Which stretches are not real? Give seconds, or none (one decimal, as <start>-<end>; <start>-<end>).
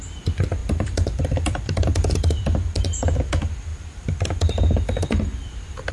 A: 0.6-3.2